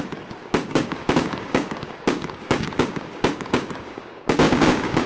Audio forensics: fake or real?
fake